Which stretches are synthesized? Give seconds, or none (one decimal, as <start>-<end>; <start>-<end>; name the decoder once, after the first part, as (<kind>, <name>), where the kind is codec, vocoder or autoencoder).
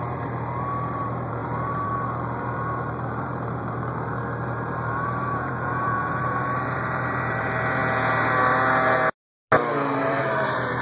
0.0-7.8 (vocoder, BigVGAN v2); 10.0-10.8